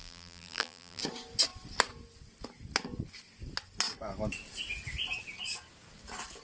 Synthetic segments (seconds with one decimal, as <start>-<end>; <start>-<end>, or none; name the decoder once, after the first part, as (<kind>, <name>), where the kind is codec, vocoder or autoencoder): 0.0-1.0 (vocoder, BigVGAN v2)